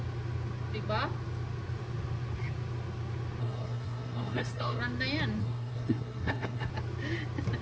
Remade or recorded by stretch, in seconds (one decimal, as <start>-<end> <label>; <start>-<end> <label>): 0.0-3.4 recorded; 3.4-4.8 remade; 4.8-5.4 recorded; 5.4-6.7 remade; 6.7-7.6 recorded